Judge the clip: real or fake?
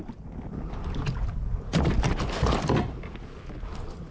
real